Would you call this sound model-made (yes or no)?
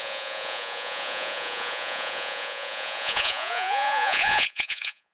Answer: yes